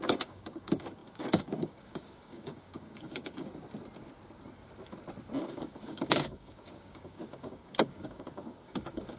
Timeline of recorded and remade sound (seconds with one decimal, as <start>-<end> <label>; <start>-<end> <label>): 0.0-3.5 remade; 3.5-5.4 recorded; 5.4-9.2 remade